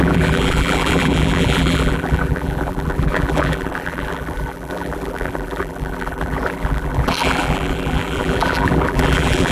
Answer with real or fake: fake